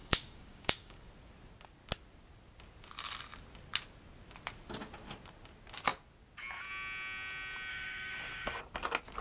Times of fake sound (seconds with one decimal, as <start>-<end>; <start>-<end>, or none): 0.0-1.1; 7.7-8.6